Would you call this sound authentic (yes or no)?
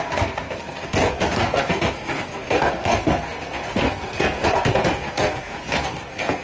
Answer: no